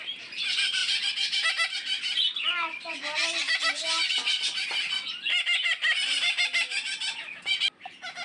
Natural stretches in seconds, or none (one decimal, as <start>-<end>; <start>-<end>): 0.0-8.2